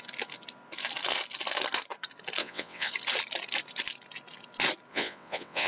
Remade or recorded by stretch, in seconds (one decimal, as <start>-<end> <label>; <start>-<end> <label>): 0.0-2.4 recorded; 2.4-2.9 remade; 2.9-4.9 recorded; 4.9-5.7 remade